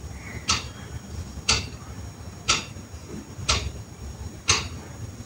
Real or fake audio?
fake